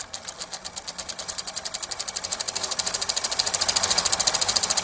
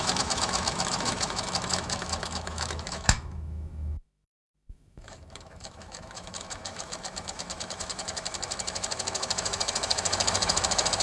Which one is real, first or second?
first